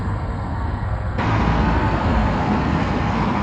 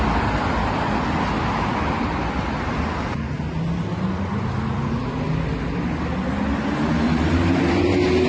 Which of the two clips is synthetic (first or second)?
first